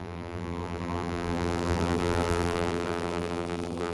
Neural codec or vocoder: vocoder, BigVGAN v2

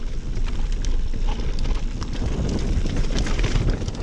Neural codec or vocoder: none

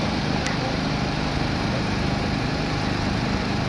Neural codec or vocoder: vocoder, BigVGAN v2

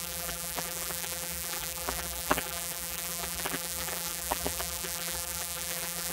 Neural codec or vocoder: vocoder, BigVGAN v2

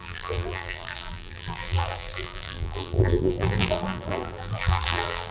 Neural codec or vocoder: vocoder, BigVGAN v2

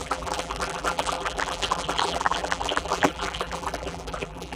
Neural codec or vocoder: vocoder, BigVGAN v2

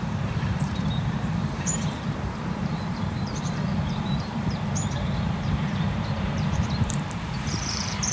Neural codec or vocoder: vocoder, BigVGAN v2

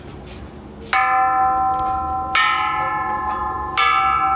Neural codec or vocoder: none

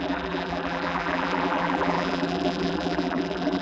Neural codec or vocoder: vocoder, BigVGAN v2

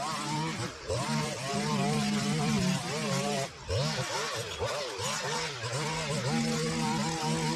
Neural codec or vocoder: none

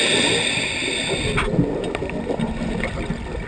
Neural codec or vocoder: none